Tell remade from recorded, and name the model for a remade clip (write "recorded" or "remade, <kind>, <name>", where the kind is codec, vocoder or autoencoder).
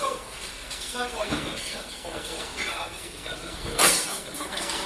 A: remade, codec, SNAC